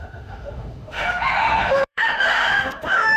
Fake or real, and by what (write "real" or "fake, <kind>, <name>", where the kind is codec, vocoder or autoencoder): fake, autoencoder, DAC-VAE